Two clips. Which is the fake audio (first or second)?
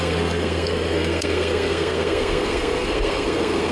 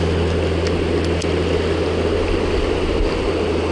first